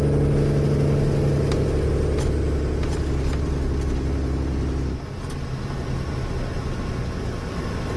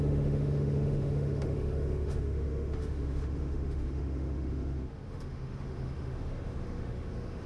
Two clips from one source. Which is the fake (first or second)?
second